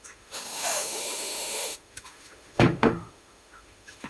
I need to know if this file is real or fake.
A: fake